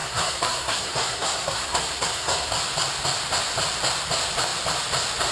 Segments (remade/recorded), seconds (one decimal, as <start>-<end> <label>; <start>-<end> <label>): 0.0-2.5 remade; 2.5-5.3 recorded